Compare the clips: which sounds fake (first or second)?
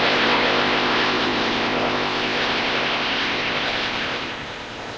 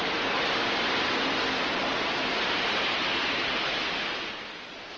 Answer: first